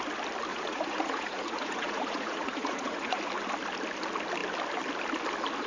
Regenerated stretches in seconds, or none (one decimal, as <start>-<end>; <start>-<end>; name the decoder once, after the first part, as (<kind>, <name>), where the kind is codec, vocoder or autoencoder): 0.5-3.2 (vocoder, Vocos)